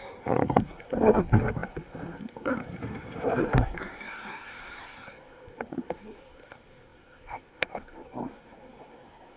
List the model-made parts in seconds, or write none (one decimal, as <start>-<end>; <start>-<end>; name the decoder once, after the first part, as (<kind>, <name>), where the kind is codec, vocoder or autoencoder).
0.0-9.4 (codec, SNAC)